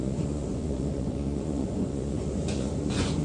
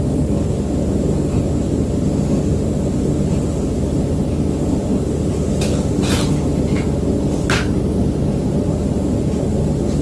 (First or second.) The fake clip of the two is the first